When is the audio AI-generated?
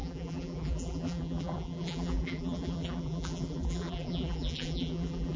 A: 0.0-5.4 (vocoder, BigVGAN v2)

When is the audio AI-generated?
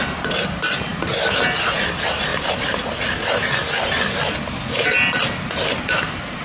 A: none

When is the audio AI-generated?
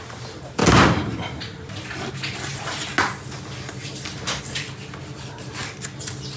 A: none